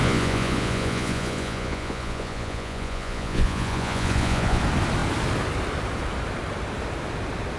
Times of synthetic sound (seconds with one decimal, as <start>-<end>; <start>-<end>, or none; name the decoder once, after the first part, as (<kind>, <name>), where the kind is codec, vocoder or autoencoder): 0.0-4.6 (vocoder, Vocos)